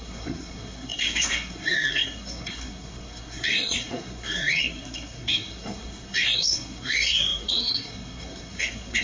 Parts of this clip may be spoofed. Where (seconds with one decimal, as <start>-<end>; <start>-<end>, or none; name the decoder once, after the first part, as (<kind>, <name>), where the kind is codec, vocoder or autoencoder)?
0.0-9.0 (codec, SNAC)